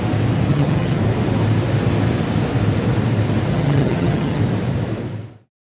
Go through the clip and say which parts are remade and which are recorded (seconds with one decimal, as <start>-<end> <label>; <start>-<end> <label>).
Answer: 0.0-0.5 recorded; 0.5-1.0 remade; 1.0-3.5 recorded; 3.5-4.4 remade; 4.4-5.7 recorded